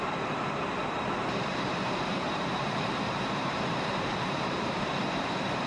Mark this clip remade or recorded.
remade